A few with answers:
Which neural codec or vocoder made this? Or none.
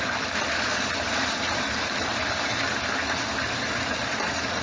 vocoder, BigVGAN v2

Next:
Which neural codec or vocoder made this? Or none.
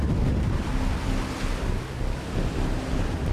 none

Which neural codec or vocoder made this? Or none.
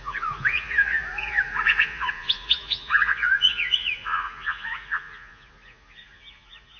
vocoder, Vocos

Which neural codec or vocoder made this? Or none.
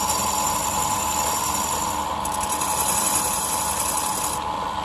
none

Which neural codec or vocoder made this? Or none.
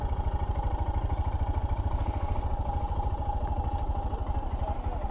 none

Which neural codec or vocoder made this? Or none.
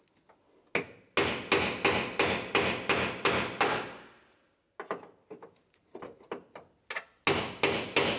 none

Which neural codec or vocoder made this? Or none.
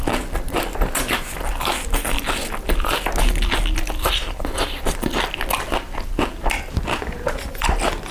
none